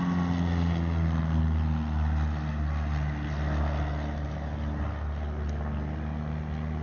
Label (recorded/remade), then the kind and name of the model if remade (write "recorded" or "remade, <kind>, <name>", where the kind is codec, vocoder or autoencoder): recorded